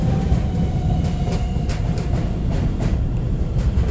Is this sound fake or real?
real